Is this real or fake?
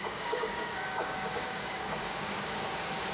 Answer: fake